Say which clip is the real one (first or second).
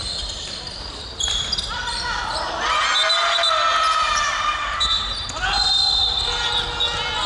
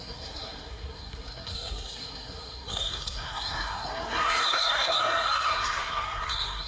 first